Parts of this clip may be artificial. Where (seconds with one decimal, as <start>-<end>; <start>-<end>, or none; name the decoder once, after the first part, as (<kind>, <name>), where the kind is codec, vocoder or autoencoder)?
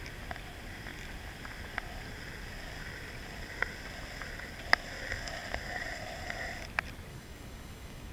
7.1-8.1 (codec, DAC)